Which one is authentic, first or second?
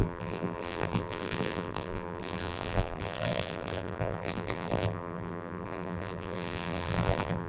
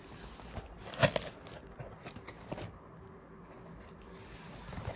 second